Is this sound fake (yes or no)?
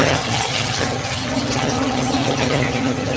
yes